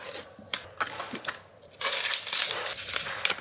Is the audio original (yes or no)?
yes